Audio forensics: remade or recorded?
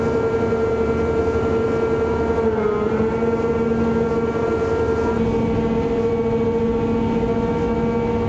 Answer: recorded